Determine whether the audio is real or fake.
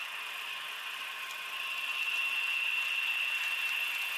real